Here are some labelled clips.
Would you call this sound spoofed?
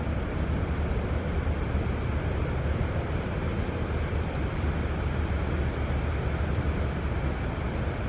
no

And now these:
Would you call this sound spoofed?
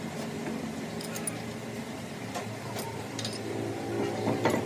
no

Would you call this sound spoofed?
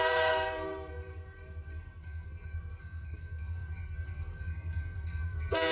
yes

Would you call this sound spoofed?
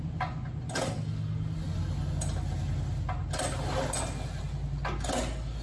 no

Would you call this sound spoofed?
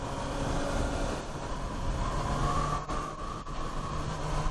no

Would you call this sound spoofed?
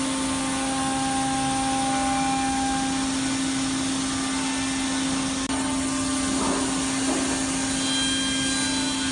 no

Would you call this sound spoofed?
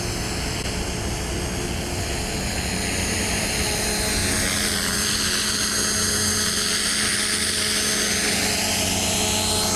no